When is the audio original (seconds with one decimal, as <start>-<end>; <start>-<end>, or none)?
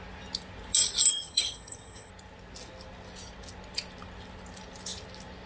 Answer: 0.0-1.1; 2.1-5.5